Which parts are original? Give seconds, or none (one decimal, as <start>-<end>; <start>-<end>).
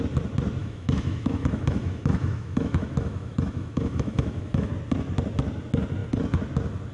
0.0-0.6; 4.7-6.9